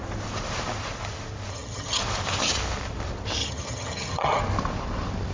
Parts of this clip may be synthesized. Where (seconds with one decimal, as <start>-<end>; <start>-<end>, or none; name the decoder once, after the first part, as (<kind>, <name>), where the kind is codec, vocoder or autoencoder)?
1.5-2.0 (vocoder, HiFi-GAN); 3.4-4.4